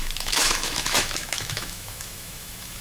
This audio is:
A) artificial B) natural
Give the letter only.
A